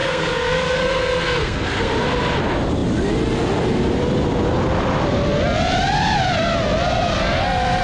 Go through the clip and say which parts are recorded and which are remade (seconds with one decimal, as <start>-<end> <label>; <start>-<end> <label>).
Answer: 0.0-1.9 remade; 1.9-7.8 recorded